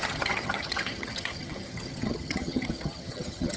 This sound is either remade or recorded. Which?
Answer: remade